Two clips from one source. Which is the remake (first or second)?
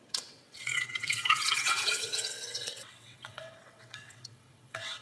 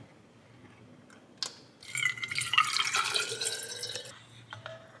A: first